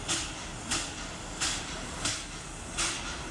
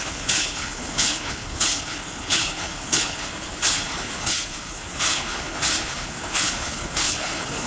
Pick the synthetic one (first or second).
second